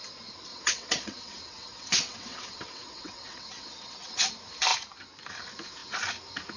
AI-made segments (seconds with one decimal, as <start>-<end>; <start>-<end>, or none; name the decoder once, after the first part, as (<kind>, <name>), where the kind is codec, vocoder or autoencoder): 0.5-4.2 (vocoder, WaveNeXt)